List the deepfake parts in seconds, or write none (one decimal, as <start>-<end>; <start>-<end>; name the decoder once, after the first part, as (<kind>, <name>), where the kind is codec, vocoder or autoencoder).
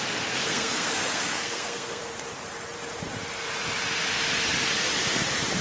0.4-2.0 (codec, SNAC)